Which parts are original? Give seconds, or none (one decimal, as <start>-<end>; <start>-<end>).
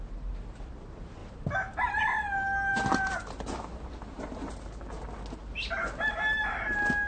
0.0-1.2; 2.1-2.7; 4.5-7.1